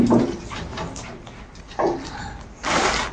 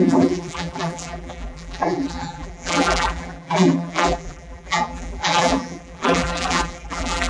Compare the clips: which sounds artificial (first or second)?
second